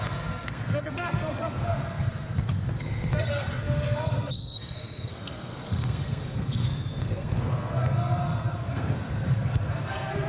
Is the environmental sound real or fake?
fake